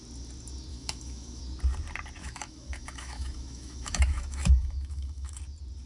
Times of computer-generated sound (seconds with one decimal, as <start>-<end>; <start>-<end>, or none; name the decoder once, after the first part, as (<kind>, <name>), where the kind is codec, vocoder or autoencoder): 0.7-1.4 (autoencoder, DAC-VAE); 2.2-5.4

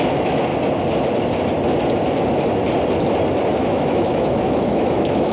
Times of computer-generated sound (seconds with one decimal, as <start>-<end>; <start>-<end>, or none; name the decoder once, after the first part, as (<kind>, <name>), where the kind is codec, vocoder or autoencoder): 0.0-0.5 (autoencoder, DAC-VAE); 3.7-5.3

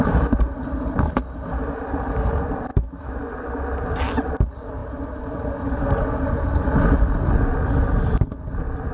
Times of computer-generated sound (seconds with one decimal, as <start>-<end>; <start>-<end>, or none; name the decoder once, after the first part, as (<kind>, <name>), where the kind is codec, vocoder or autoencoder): 2.7-3.2 (autoencoder, DAC-VAE)